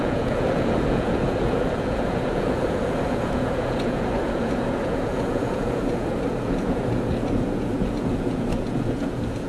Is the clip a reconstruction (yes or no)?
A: yes